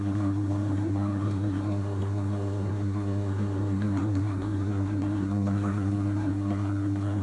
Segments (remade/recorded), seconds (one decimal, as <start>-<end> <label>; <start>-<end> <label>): 0.0-7.2 remade